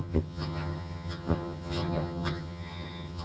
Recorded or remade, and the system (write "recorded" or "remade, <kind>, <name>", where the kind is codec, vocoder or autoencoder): remade, vocoder, HiFi-GAN